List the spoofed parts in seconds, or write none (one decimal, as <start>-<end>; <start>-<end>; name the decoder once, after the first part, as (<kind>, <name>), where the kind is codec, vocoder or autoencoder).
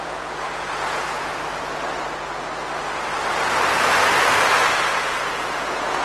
0.0-1.3 (vocoder, Vocos); 4.9-6.0